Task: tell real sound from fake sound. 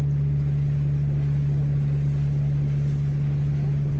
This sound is real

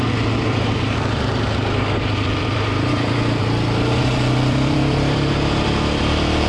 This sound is fake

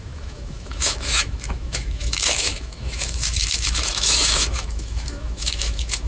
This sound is fake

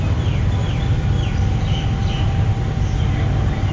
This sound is real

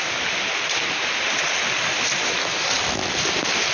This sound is real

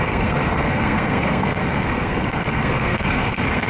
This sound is fake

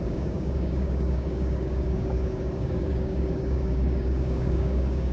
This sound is fake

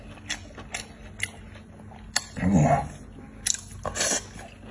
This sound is real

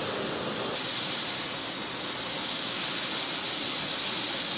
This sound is real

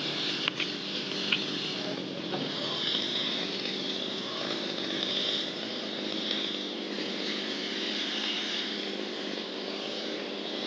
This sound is real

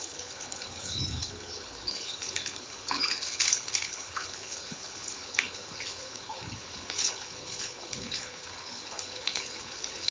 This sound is fake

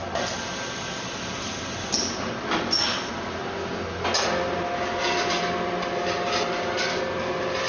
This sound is real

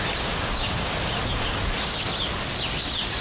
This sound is real